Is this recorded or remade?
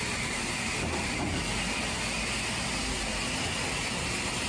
recorded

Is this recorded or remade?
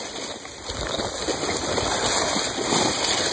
recorded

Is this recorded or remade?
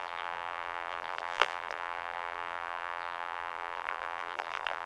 remade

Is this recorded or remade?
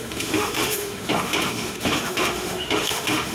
remade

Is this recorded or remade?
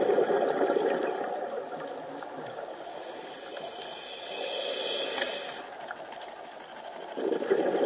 recorded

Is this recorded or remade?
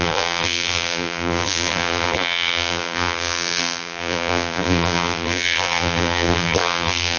remade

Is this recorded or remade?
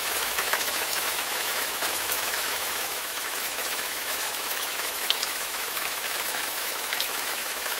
remade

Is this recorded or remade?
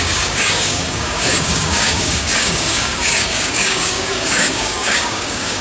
remade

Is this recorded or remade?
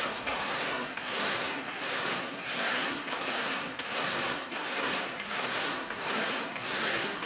remade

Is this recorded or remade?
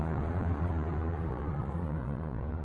remade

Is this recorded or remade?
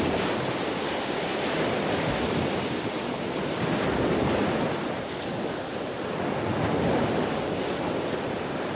recorded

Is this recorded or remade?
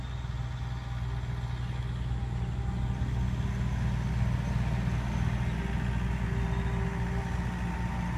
recorded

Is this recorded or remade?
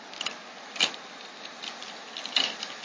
recorded